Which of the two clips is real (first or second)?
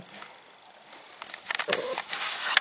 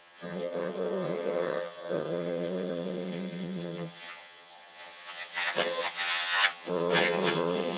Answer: first